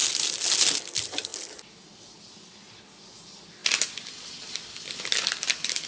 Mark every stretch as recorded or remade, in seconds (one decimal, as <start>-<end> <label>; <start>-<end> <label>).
0.0-5.9 recorded